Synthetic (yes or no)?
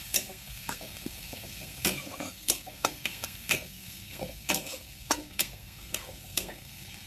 yes